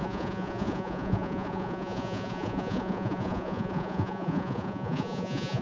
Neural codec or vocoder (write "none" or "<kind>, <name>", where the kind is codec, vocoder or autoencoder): vocoder, Vocos